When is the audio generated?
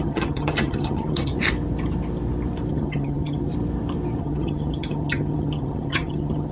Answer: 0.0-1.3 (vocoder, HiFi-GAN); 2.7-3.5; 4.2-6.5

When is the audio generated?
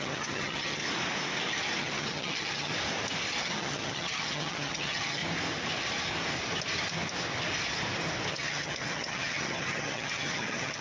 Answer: 0.0-0.8 (vocoder, HiFi-GAN); 1.8-2.7; 3.4-5.2; 8.3-10.8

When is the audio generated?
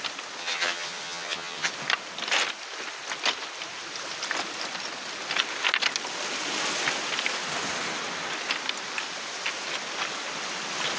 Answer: 0.4-1.7 (vocoder, HiFi-GAN)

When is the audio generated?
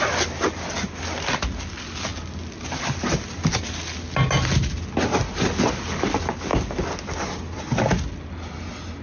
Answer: none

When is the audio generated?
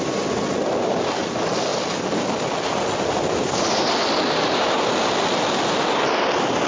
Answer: none